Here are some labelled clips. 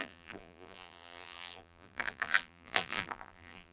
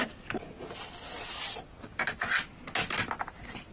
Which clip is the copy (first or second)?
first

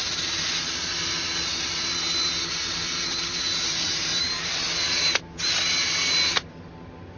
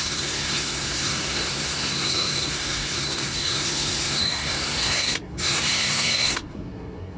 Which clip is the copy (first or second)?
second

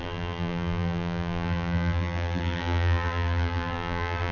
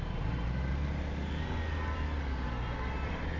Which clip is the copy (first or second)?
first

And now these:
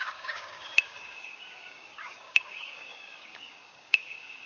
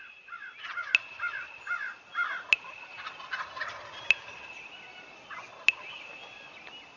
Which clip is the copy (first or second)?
first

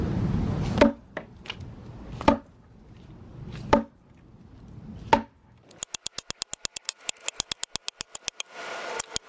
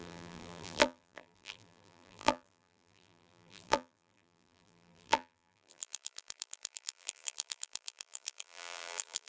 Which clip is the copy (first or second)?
second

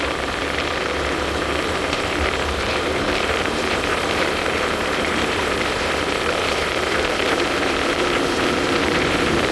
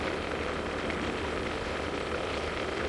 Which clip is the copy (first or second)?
first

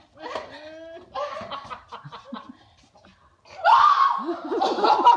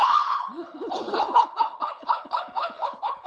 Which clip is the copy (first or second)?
second